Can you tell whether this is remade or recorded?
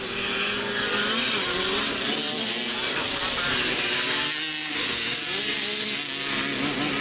recorded